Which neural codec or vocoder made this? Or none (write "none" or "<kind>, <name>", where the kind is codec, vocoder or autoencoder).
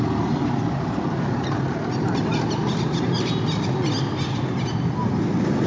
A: none